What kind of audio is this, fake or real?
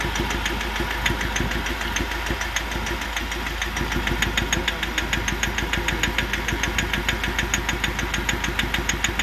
real